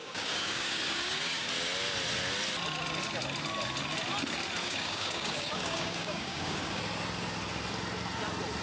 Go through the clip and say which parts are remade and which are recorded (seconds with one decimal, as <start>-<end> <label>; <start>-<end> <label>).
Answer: 0.0-1.5 remade; 1.5-4.6 recorded; 4.6-6.8 remade; 6.8-8.6 recorded